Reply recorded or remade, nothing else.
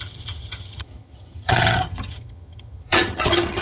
remade